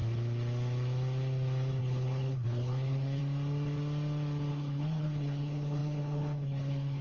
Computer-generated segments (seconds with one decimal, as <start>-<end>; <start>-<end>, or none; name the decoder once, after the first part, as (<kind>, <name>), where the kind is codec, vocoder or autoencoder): 1.8-3.2 (codec, HILCodec); 4.5-7.0